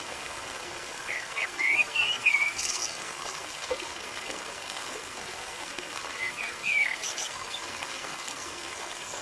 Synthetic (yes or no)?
yes